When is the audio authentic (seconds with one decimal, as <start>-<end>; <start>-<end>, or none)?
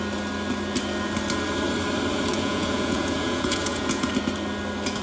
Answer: 0.0-2.3; 4.1-5.0